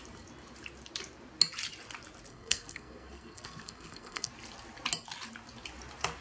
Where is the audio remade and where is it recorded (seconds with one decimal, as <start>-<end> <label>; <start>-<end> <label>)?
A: 0.0-2.3 recorded; 2.3-4.3 remade; 4.3-6.2 recorded